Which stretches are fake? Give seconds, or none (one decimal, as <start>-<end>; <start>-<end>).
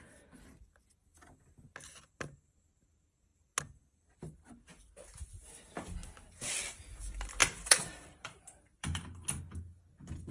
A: 7.4-9.4